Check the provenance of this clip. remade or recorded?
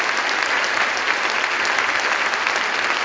recorded